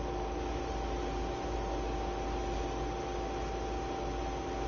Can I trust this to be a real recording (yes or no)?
yes